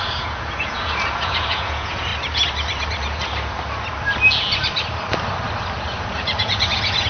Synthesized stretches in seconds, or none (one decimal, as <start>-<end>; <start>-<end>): 0.0-2.1; 6.0-7.1